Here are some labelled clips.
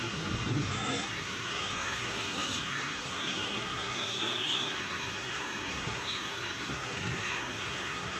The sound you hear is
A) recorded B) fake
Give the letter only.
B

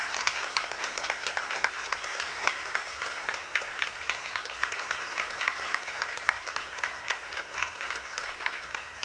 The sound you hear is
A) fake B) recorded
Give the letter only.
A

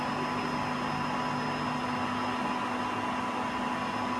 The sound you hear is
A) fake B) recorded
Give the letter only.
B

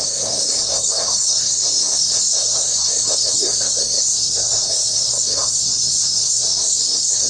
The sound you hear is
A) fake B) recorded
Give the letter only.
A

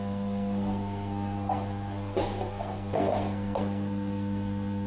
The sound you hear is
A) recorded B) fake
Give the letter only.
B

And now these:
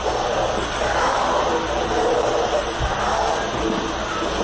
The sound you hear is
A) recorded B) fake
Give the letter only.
A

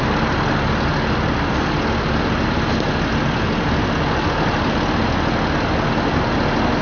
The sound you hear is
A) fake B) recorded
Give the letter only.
B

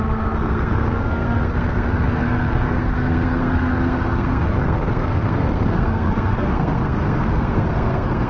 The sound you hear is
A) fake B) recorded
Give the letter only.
A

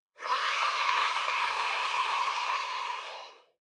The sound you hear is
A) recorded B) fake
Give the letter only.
B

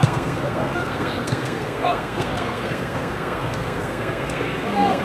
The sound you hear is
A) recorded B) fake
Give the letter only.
B